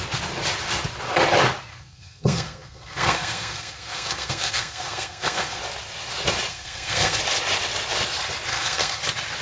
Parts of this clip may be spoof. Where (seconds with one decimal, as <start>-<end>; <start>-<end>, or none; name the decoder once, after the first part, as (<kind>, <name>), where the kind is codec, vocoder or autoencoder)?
1.7-5.6 (codec, SNAC); 6.5-7.2; 8.5-9.0